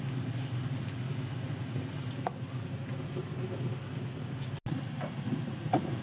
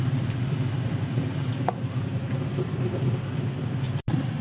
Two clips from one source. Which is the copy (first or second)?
second